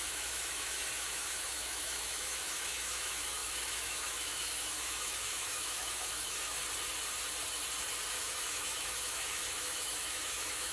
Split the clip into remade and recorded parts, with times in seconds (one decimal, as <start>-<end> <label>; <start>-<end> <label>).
0.0-6.6 remade; 6.6-8.2 recorded; 8.2-10.7 remade